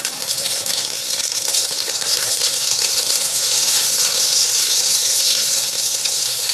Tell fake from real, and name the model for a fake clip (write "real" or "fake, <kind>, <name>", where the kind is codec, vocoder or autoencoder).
fake, codec, SNAC